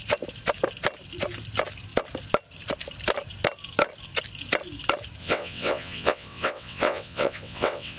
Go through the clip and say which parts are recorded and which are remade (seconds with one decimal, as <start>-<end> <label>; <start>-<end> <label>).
0.0-5.2 recorded; 5.2-8.0 remade